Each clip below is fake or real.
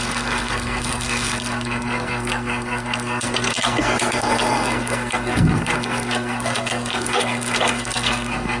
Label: fake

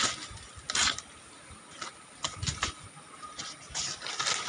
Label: real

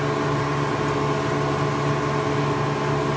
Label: real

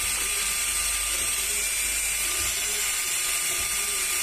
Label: real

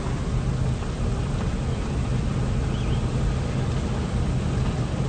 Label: real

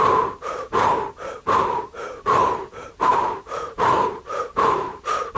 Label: fake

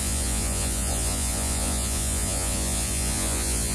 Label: fake